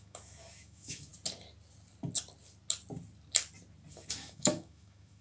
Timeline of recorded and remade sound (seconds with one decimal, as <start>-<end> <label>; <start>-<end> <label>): 0.0-1.1 remade; 1.1-3.9 recorded; 3.9-5.2 remade